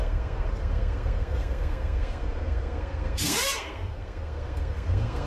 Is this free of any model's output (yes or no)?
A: no